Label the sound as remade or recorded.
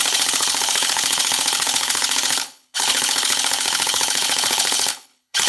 remade